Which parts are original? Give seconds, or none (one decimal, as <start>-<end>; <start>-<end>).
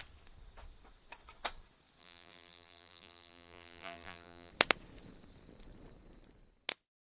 0.0-2.0; 4.5-7.0